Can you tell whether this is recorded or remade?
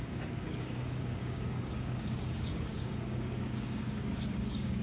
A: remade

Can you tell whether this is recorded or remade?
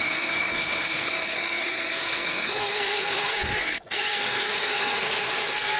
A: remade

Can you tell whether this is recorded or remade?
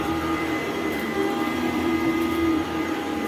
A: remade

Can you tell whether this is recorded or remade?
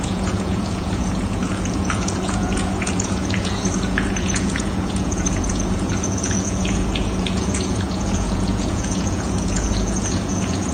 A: remade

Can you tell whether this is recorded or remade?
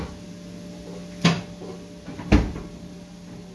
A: recorded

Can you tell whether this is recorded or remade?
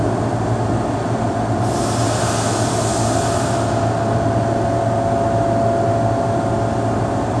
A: recorded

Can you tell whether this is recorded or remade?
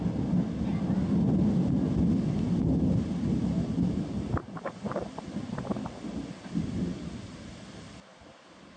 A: recorded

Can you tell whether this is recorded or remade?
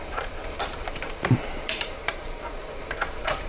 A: remade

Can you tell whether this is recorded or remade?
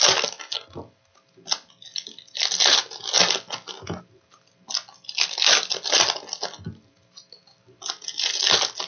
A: recorded